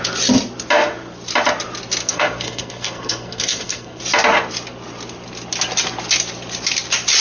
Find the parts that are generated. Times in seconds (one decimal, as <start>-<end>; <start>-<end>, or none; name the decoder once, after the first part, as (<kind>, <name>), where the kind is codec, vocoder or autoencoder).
2.0-4.0 (codec, SNAC)